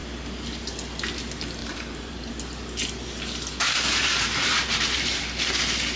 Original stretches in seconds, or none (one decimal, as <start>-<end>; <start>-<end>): 0.0-1.6; 2.3-3.9; 5.2-6.0